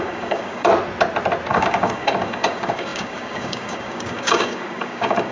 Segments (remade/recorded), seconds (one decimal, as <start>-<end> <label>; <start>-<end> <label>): 0.0-0.7 remade; 0.7-1.5 recorded; 1.5-5.3 remade